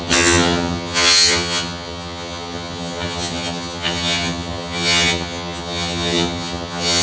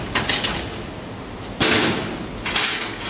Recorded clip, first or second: second